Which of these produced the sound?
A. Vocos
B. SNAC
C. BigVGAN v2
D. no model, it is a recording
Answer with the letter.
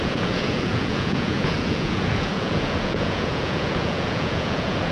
A